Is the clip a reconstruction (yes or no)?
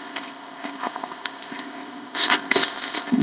yes